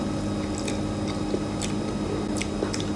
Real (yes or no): yes